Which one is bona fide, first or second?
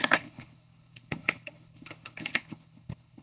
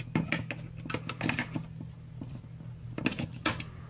second